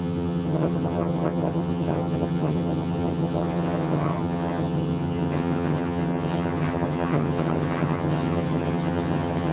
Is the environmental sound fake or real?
fake